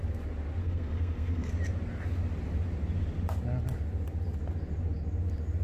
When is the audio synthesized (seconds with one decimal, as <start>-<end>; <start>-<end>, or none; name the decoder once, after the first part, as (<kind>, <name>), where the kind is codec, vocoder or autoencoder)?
0.6-1.5 (codec, SNAC)